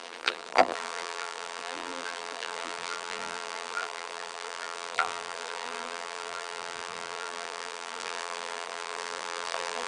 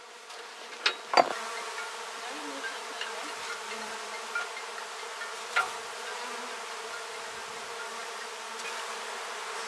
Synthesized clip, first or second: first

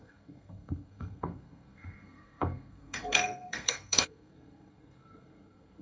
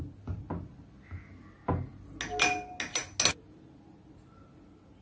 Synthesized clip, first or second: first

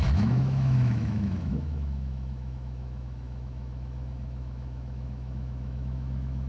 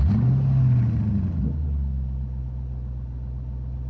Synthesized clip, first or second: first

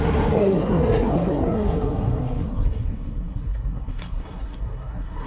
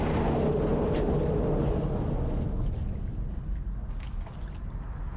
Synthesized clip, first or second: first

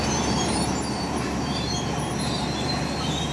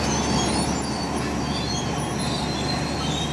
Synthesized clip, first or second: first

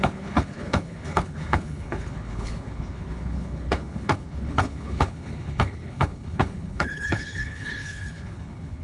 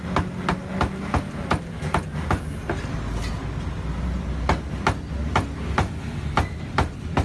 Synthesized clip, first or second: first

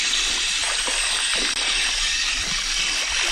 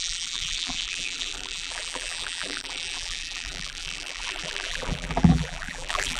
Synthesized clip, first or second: second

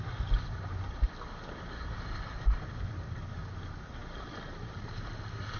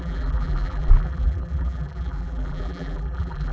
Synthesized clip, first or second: second